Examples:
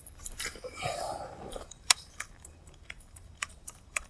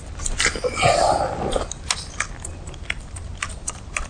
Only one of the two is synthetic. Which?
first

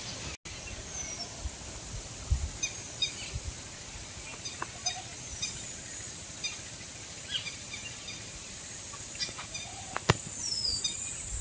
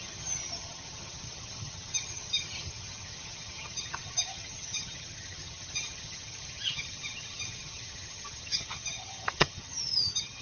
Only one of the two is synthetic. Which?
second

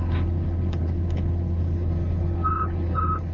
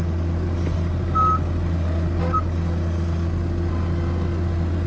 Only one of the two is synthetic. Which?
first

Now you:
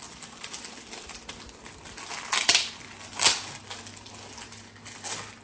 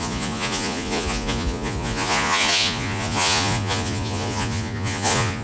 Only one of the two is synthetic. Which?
second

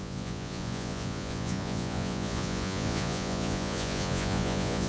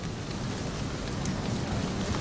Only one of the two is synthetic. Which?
first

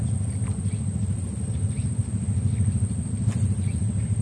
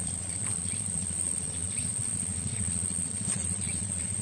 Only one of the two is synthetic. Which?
second